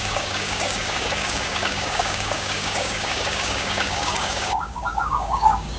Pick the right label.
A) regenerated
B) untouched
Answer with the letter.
A